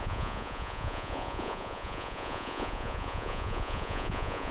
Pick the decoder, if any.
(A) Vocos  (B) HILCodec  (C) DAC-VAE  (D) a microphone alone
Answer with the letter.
A